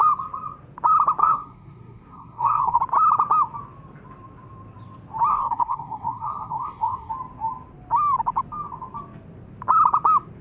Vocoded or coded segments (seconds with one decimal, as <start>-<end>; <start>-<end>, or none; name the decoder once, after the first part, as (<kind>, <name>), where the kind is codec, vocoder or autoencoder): 1.2-2.8 (codec, SNAC); 5.3-7.1